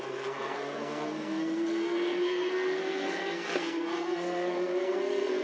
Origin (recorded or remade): remade